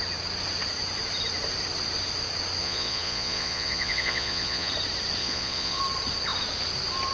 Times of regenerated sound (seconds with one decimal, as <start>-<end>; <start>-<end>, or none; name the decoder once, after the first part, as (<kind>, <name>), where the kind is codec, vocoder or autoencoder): 2.6-4.7 (vocoder, Vocos); 5.2-5.8